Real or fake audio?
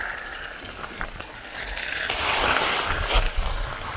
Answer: real